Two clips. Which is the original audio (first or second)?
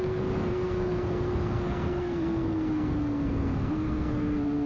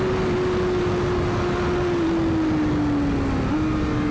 second